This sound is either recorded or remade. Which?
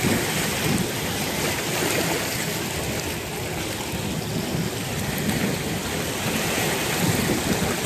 recorded